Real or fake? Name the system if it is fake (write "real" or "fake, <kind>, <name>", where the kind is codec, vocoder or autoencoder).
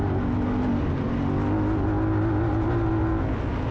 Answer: real